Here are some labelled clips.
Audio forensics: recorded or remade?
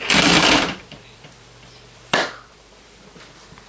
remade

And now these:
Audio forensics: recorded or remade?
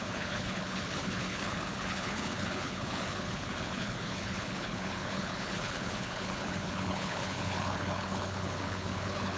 remade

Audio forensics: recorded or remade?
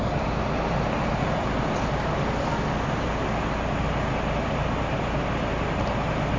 recorded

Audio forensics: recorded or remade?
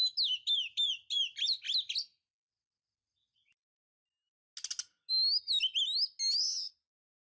recorded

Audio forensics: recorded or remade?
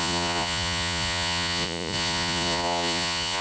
remade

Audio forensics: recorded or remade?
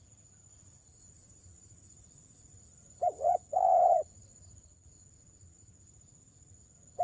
remade